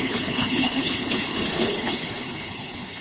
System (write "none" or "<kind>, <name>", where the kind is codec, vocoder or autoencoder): codec, HILCodec